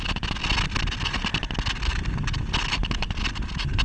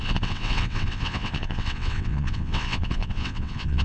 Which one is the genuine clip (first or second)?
first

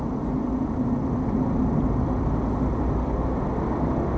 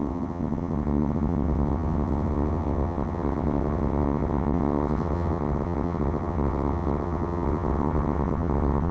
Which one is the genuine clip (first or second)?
first